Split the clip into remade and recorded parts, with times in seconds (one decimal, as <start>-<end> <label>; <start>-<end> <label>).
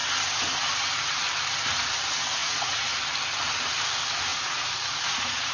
0.0-2.4 recorded; 2.4-3.0 remade; 3.0-4.3 recorded; 4.3-5.5 remade